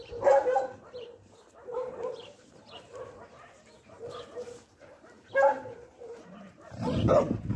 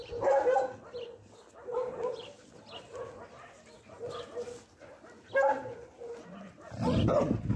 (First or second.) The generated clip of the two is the first